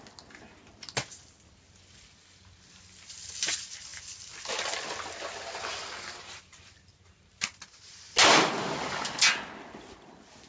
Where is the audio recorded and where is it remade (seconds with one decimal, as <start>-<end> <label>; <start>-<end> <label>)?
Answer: 0.0-10.5 recorded